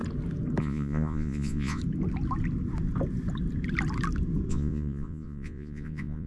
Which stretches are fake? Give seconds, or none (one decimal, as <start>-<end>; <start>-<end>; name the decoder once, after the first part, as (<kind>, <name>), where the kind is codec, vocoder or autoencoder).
0.6-1.8 (vocoder, Vocos); 4.5-6.3